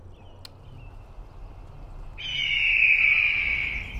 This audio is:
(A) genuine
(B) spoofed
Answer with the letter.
A